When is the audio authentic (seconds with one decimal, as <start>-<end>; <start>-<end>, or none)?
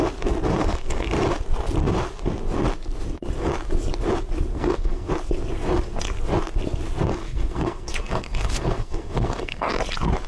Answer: 0.0-0.6; 1.1-4.5; 5.1-7.1; 9.7-10.3